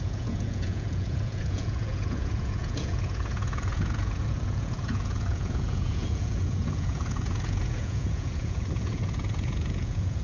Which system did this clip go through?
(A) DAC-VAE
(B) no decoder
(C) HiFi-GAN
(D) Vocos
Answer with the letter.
D